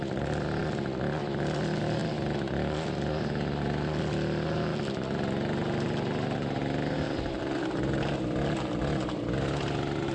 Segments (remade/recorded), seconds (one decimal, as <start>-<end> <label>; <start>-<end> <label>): 0.0-10.1 recorded

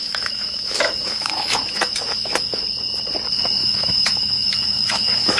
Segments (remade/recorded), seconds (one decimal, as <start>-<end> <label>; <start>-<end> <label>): 0.0-2.6 remade; 2.6-3.6 recorded; 3.6-5.4 remade

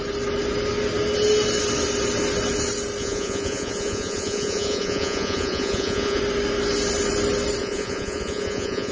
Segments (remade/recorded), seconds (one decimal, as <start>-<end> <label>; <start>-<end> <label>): 0.0-3.0 recorded; 3.0-6.2 remade; 6.2-7.6 recorded; 7.6-8.9 remade

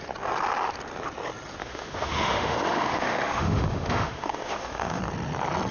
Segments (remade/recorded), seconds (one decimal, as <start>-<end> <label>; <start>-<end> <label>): 0.0-1.6 recorded; 1.6-5.0 remade; 5.0-5.7 recorded

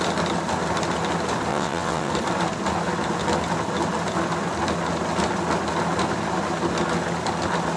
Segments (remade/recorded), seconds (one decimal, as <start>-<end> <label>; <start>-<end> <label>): 0.0-1.5 recorded; 1.5-2.1 remade; 2.1-7.8 recorded

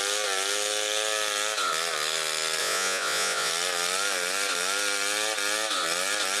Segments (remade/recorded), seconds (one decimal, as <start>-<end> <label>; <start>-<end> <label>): 0.0-2.6 recorded; 2.6-3.5 remade; 3.5-6.4 recorded

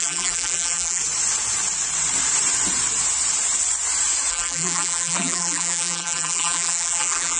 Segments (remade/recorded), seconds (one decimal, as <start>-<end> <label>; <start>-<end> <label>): 0.0-1.0 remade; 1.0-4.3 recorded; 4.3-7.4 remade

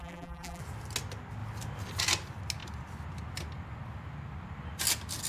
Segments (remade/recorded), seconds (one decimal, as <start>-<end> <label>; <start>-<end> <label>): 0.0-0.6 remade; 0.6-5.3 recorded